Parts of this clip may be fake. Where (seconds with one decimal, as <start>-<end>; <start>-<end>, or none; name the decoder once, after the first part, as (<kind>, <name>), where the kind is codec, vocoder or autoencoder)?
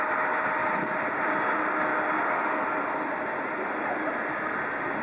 none